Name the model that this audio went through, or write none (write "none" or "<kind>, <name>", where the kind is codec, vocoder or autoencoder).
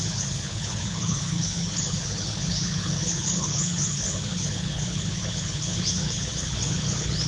codec, HILCodec